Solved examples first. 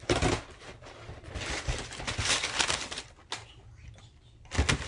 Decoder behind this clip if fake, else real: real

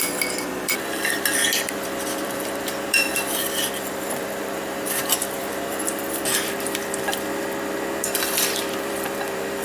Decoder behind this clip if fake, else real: fake, vocoder, BigVGAN v2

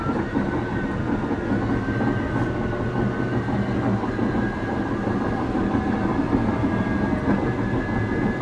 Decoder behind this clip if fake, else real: real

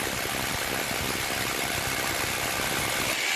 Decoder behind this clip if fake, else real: real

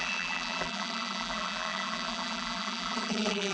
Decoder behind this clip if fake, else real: fake, vocoder, BigVGAN v2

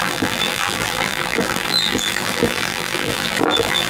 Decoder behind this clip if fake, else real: fake, vocoder, BigVGAN v2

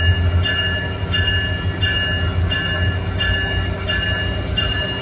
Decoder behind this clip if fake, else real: real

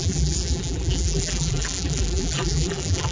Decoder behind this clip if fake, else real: fake, vocoder, BigVGAN v2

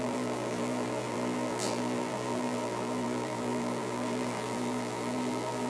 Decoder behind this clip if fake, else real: fake, vocoder, BigVGAN v2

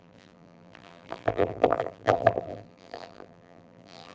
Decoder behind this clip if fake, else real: fake, vocoder, BigVGAN v2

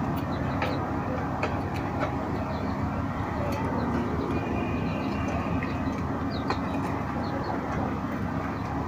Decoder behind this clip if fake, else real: real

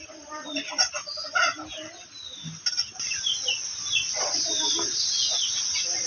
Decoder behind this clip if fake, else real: real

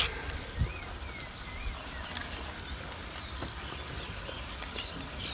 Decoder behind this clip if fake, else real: real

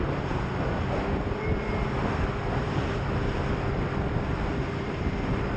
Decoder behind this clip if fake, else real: fake, vocoder, BigVGAN v2